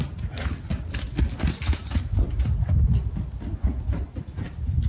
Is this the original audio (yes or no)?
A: yes